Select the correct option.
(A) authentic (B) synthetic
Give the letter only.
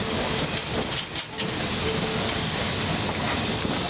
A